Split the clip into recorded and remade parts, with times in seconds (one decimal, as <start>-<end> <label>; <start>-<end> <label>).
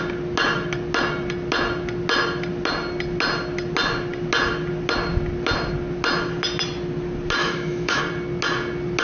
0.0-7.4 recorded; 7.4-8.0 remade; 8.0-9.0 recorded